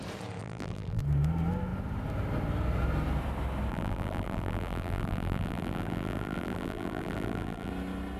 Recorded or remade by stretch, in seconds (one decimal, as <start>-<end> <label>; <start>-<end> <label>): 0.0-0.4 recorded; 0.4-1.0 remade; 1.0-3.7 recorded; 3.7-7.7 remade; 7.7-8.2 recorded